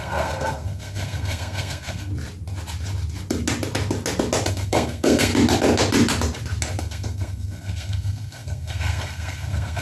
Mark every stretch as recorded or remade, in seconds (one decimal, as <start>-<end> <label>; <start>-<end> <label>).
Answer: 0.0-2.1 remade; 2.1-4.5 recorded; 4.5-5.3 remade; 5.3-6.8 recorded; 6.8-9.8 remade